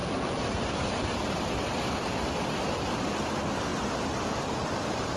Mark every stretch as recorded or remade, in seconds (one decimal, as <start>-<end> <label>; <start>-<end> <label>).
0.0-5.2 recorded